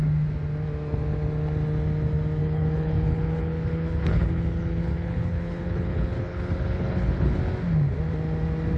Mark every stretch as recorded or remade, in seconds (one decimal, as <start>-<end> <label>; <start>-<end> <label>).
0.0-2.4 recorded; 2.4-7.4 remade; 7.4-8.8 recorded